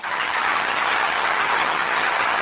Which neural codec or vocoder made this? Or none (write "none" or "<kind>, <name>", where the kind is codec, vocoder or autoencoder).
vocoder, HiFi-GAN